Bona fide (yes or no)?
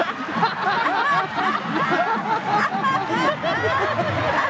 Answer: yes